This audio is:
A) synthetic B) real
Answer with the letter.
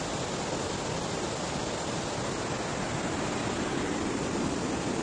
B